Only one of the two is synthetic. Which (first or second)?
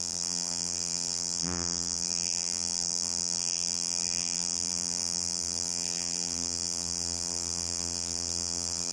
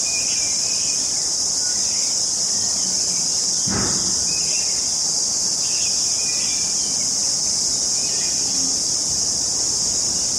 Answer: first